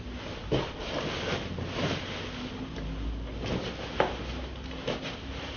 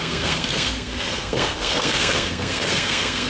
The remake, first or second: second